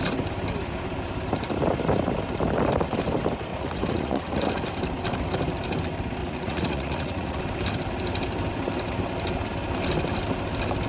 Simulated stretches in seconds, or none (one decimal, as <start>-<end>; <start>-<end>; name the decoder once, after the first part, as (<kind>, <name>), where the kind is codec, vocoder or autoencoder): 3.5-4.4 (vocoder, Vocos); 6.2-7.4